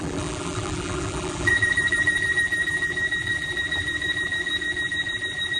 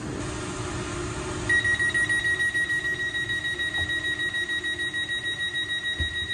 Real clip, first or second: second